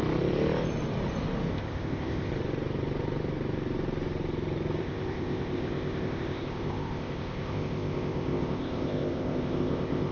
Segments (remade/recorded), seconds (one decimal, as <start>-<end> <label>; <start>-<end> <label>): 0.0-1.5 recorded; 1.5-2.3 remade; 2.3-4.8 recorded; 4.8-10.1 remade